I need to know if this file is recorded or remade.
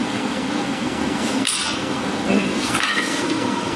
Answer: remade